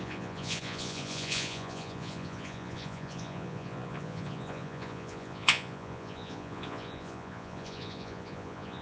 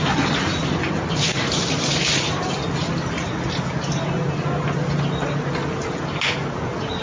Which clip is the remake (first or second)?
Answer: first